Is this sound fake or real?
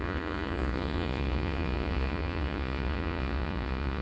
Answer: fake